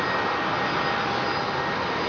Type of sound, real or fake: real